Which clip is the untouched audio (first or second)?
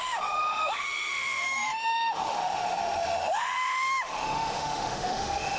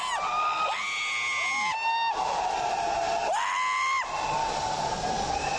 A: second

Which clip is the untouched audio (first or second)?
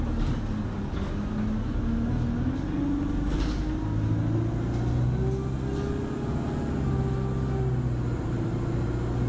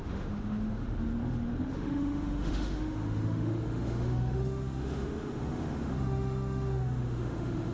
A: first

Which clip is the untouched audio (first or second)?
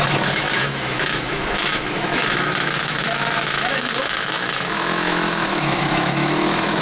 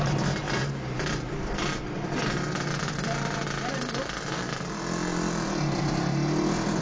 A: second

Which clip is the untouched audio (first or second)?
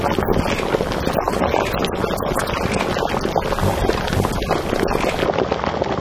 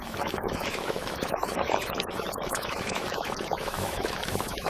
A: first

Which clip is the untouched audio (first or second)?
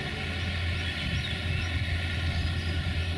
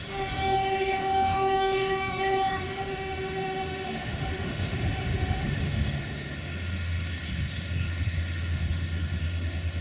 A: first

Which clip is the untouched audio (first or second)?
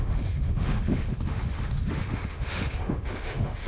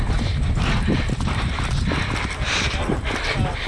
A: second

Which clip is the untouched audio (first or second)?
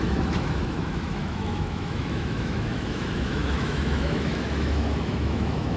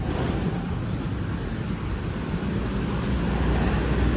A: second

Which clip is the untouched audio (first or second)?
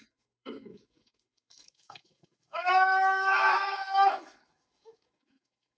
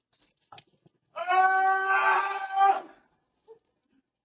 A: second